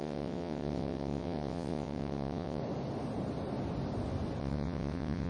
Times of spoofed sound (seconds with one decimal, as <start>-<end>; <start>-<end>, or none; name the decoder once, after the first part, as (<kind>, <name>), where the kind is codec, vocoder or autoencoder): 0.0-2.6 (vocoder, WaveNeXt); 4.4-5.3